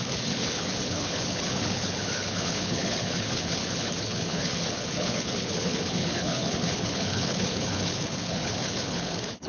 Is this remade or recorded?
remade